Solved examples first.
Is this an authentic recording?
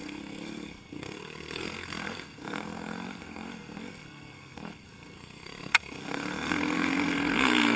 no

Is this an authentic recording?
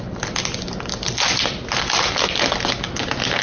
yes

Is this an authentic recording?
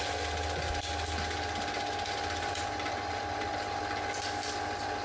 yes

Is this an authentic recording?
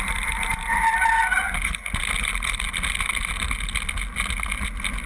yes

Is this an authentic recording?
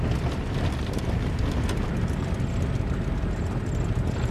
yes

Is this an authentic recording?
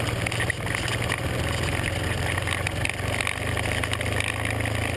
yes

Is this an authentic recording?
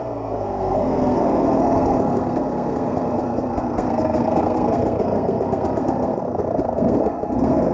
no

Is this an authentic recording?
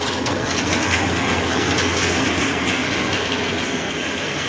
no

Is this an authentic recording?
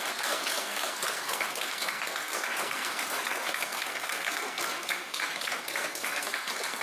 no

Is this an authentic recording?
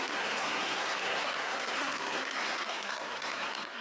no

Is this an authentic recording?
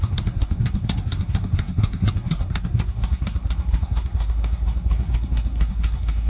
no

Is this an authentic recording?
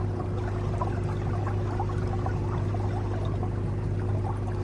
yes